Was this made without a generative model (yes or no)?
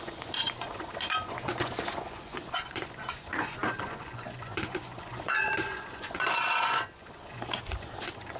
no